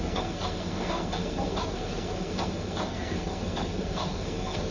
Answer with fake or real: fake